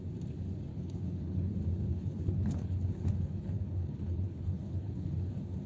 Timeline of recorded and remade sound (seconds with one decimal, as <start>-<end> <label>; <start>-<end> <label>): 0.0-0.7 recorded; 0.7-1.5 remade; 1.5-1.9 recorded; 1.9-5.3 remade; 5.3-5.7 recorded